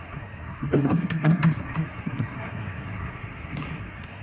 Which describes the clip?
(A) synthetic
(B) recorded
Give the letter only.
A